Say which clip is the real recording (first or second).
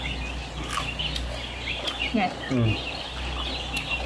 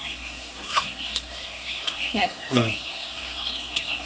first